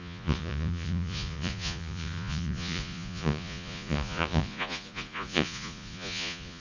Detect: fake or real fake